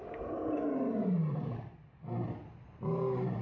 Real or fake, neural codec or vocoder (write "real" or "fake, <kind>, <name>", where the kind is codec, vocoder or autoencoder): real